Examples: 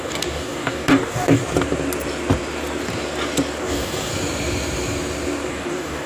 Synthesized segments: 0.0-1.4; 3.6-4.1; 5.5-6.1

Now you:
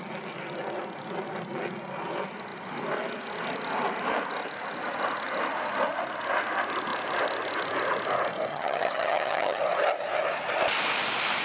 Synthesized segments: 8.5-9.6

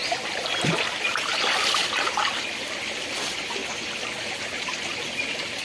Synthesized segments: 0.9-3.6; 5.1-5.6